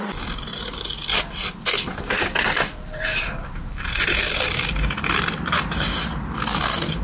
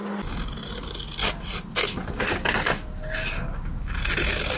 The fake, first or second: first